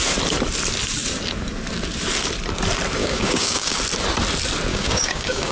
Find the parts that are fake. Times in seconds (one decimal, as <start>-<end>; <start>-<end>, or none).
3.0-3.8; 4.7-5.5